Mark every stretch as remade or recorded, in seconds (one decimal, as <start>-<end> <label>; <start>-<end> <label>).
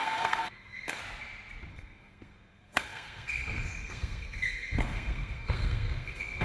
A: 0.0-1.0 remade; 1.0-1.7 recorded; 1.7-6.4 remade